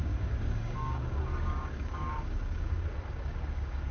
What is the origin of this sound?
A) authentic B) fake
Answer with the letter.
B